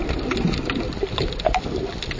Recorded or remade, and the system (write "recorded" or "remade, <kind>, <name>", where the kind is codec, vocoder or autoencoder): recorded